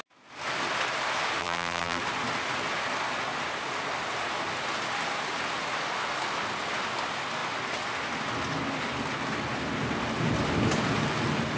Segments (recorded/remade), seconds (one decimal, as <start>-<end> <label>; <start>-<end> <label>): 0.0-1.4 recorded; 1.4-2.0 remade; 2.0-11.6 recorded